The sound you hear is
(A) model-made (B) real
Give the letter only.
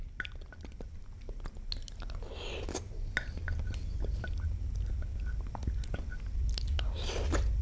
B